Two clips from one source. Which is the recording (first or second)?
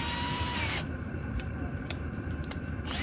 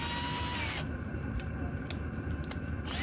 second